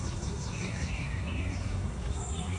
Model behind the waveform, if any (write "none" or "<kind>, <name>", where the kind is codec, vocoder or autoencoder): codec, SNAC